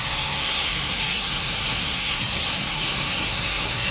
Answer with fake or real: fake